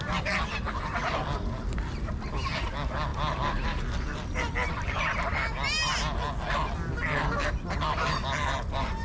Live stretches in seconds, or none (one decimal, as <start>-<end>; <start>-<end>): 0.0-9.0